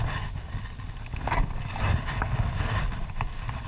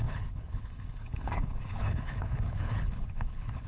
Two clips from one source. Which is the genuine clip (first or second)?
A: first